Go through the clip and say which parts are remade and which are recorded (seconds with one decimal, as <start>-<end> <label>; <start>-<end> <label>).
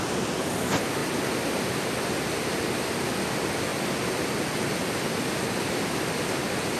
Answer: 0.0-6.8 recorded